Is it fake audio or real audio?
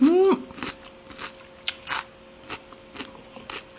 real